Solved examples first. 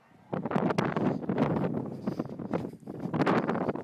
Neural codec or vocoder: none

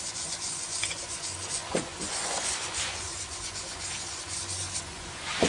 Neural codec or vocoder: vocoder, Vocos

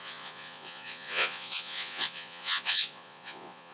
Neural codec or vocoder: vocoder, Vocos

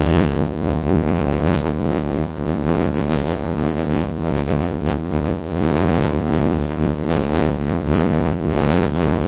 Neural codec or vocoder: vocoder, Vocos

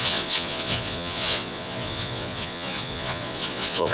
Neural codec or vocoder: vocoder, Vocos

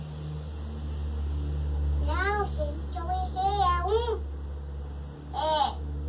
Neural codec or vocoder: none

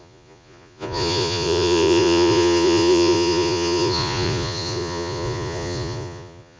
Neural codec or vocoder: vocoder, Vocos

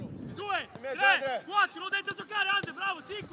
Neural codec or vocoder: none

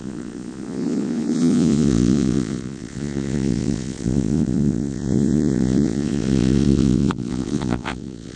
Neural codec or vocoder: vocoder, Vocos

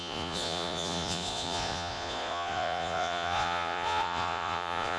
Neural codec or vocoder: vocoder, Vocos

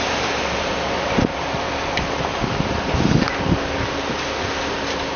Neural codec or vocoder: none